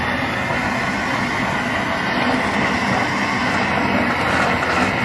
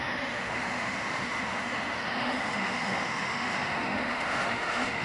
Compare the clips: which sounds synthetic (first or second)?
second